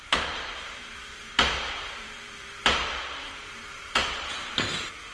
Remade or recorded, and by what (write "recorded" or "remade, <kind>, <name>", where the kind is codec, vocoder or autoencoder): remade, vocoder, BigVGAN v2